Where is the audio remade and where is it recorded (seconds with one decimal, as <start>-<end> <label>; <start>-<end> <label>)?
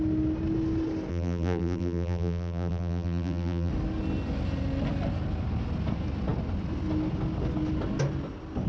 0.0-1.1 recorded; 1.1-3.7 remade; 3.7-8.7 recorded